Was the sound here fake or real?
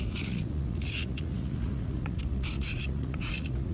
fake